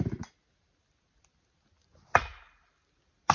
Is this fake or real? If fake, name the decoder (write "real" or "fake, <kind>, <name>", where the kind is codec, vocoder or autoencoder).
real